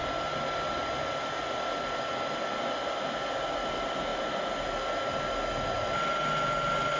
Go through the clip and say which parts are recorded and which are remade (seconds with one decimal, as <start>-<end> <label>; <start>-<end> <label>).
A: 0.0-7.0 recorded

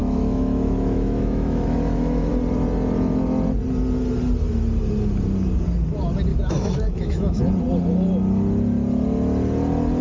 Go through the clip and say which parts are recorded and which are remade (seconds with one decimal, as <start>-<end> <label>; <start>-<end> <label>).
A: 0.0-2.3 remade; 2.3-6.3 recorded; 6.3-7.4 remade; 7.4-10.0 recorded

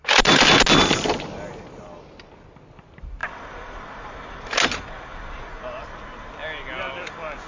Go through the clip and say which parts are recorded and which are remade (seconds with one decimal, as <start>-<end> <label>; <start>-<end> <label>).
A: 0.0-7.5 recorded